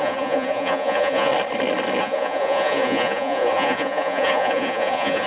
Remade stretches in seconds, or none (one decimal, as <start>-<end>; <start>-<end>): 0.0-1.3; 2.0-5.3